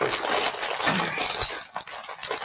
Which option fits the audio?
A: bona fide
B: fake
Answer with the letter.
A